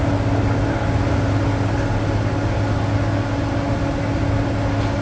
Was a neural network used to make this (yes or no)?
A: no